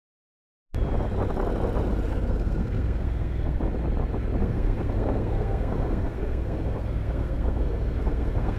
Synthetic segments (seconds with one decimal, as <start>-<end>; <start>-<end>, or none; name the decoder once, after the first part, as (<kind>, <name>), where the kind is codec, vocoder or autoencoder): 2.1-3.6 (codec, SNAC); 4.4-8.6